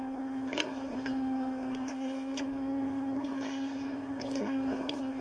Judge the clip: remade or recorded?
remade